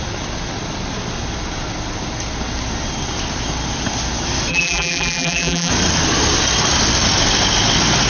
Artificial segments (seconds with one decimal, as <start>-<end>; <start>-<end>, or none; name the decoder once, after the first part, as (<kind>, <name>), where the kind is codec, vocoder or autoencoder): 4.5-5.7 (vocoder, BigVGAN v2)